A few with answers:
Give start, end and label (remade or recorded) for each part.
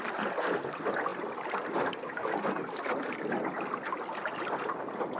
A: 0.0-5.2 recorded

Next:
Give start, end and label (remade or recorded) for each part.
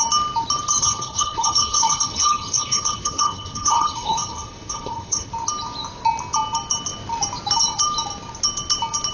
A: 0.0-0.8 recorded; 0.8-5.3 remade; 5.3-9.1 recorded